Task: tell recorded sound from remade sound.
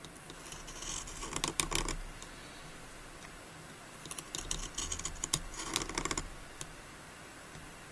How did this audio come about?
recorded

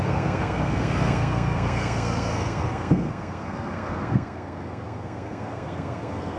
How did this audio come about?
remade